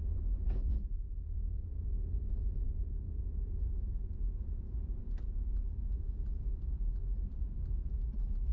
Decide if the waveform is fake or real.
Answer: fake